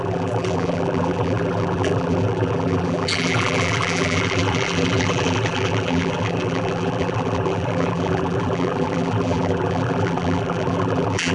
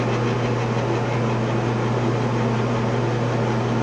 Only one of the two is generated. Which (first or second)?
first